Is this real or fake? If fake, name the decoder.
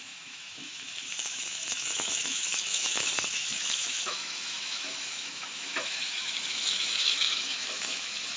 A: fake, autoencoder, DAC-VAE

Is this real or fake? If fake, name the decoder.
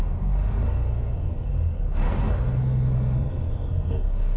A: fake, codec, SNAC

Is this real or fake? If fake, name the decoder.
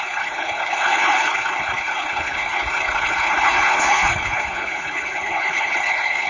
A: fake, codec, HILCodec